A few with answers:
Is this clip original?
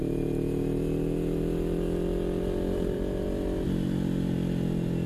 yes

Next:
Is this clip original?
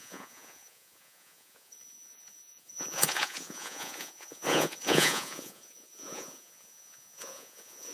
no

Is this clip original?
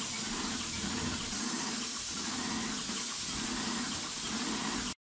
yes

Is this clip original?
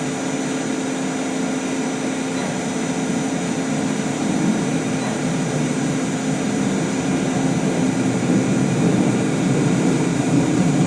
yes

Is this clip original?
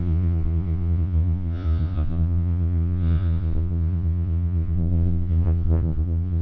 no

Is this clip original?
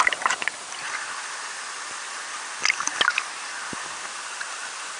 yes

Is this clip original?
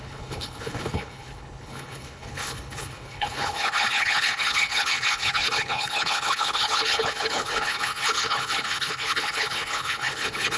no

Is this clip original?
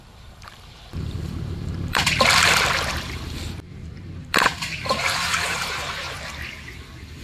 no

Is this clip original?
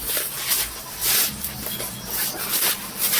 yes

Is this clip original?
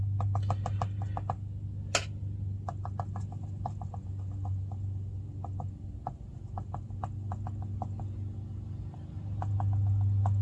yes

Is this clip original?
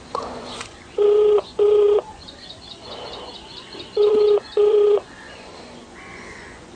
no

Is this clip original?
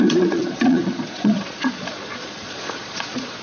no